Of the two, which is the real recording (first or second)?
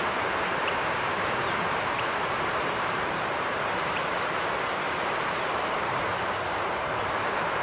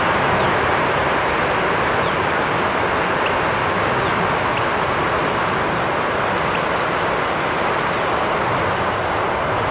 second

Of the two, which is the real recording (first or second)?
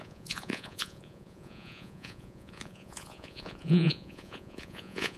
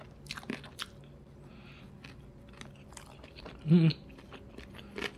second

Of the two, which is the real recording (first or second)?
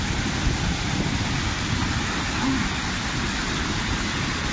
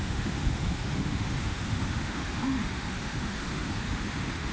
first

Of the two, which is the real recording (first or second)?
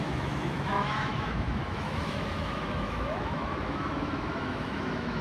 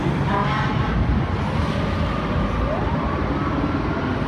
second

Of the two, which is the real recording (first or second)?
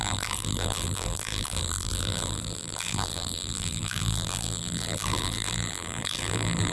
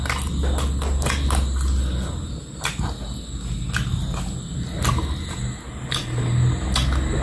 second